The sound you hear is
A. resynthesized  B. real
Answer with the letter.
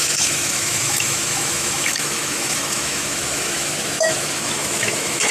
A